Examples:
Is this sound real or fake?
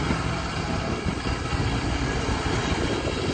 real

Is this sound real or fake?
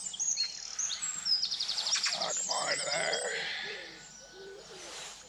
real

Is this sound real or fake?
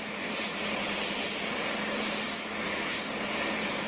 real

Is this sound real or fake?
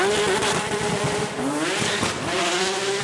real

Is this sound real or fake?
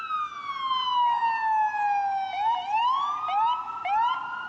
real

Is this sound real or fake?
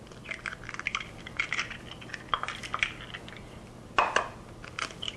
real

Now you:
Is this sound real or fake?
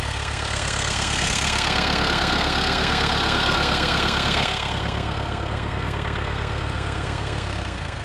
fake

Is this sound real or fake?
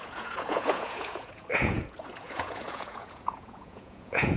fake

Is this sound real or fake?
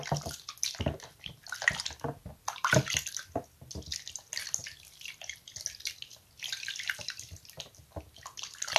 real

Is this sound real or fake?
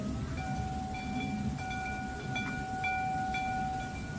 real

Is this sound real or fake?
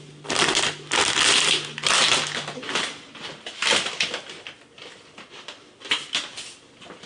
real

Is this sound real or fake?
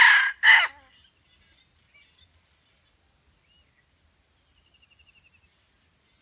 real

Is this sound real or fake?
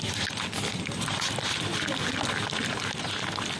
real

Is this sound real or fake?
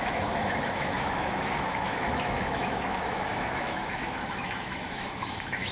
fake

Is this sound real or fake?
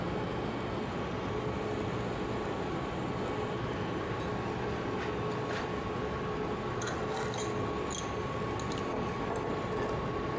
real